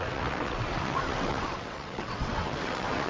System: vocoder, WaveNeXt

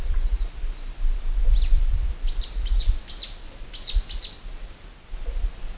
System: none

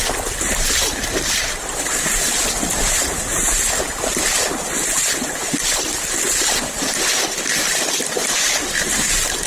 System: none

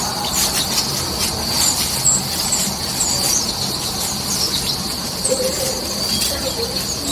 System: none